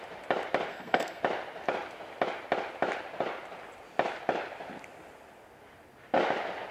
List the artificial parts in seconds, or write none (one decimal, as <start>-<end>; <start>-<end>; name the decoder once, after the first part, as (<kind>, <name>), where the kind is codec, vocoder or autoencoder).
0.7-1.2 (codec, SNAC)